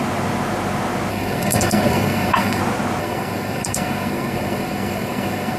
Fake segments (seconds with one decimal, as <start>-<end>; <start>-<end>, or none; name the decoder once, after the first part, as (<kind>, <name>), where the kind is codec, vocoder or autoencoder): 1.1-2.6 (codec, SNAC); 3.0-5.6